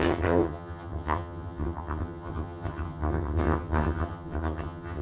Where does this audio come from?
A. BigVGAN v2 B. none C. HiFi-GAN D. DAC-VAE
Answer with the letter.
C